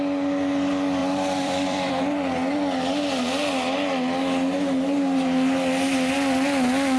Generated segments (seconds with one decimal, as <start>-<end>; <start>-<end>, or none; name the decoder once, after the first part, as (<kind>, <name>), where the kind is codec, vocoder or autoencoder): 1.0-1.9 (vocoder, BigVGAN v2)